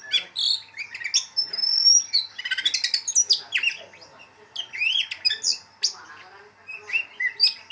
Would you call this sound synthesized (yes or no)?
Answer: no